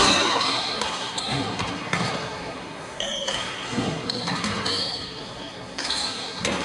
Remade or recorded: remade